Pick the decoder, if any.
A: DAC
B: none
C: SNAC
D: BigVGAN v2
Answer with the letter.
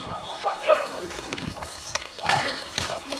C